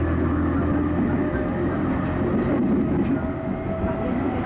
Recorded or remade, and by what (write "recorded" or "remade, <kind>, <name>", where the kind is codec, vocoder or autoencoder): recorded